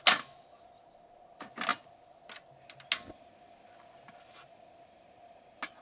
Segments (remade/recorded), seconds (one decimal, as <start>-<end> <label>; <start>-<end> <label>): 0.0-5.8 recorded